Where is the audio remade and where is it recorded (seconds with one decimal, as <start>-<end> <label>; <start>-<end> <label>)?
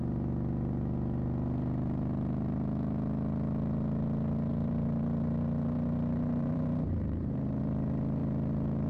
0.0-4.5 recorded; 4.5-7.6 remade; 7.6-8.9 recorded